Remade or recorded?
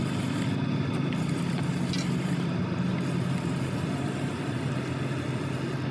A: recorded